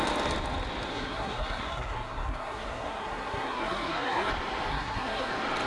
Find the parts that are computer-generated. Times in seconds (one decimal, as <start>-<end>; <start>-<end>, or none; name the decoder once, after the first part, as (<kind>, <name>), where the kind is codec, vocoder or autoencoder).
0.9-4.3 (codec, SNAC); 4.7-5.3